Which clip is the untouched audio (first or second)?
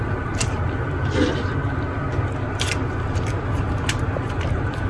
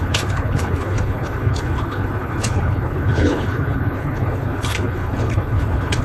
first